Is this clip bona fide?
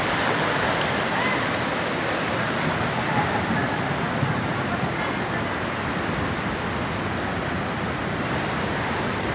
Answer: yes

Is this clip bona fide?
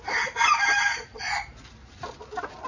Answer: yes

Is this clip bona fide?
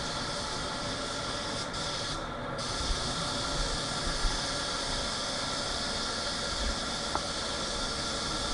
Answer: yes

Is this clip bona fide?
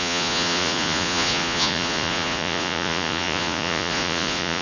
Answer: no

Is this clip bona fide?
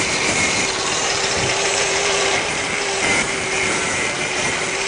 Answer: no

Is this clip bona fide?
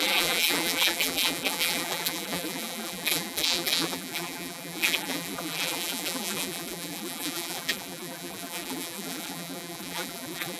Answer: no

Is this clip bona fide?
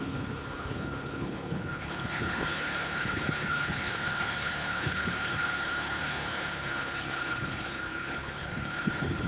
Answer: no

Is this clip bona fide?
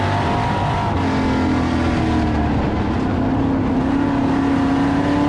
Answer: yes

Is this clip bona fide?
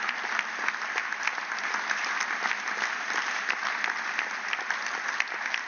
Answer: yes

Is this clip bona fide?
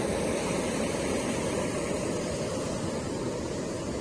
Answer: yes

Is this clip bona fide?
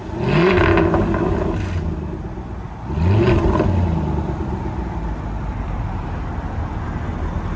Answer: yes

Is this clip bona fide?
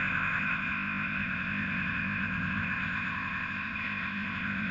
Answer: no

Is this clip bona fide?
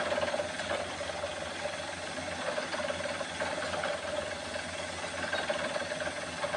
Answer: yes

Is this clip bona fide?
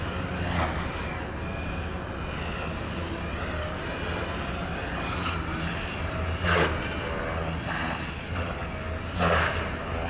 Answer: yes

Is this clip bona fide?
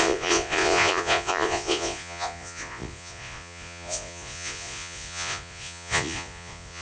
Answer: no